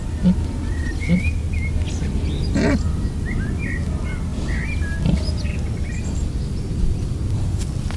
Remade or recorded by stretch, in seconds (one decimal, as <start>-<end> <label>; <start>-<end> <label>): 0.0-8.0 recorded